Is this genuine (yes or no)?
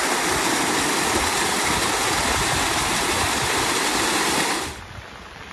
yes